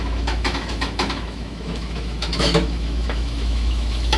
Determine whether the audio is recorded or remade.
remade